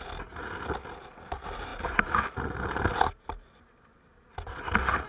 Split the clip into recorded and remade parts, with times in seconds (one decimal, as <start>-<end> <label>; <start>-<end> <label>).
0.0-5.1 recorded